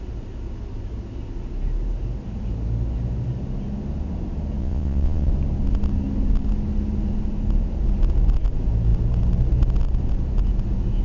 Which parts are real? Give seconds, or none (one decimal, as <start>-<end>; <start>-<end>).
0.0-4.6; 5.3-11.0